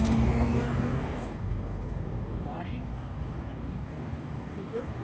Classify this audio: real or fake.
fake